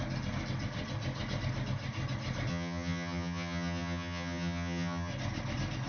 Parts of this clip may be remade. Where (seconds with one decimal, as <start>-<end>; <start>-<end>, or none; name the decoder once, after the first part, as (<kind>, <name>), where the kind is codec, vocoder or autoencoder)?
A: 2.5-5.1 (vocoder, HiFi-GAN)